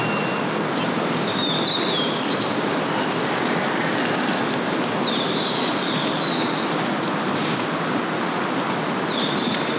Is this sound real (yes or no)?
no